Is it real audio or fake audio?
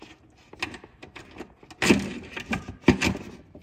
real